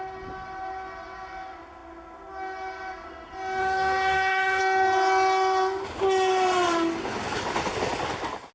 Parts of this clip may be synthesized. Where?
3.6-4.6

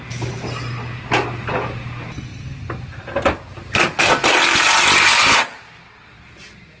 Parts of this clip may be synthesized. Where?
none

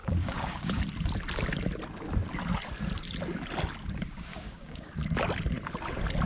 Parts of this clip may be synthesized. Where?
0.0-0.8; 4.3-4.9

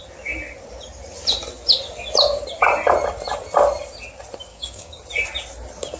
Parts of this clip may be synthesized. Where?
4.5-5.0

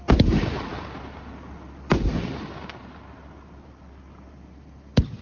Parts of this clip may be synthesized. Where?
none

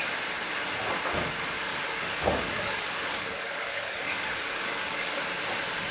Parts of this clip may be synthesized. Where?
1.7-5.2